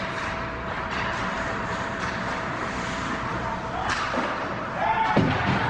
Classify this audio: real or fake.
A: fake